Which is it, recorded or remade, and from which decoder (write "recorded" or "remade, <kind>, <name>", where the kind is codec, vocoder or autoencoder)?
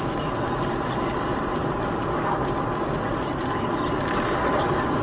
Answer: recorded